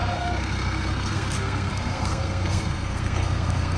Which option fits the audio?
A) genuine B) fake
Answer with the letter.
B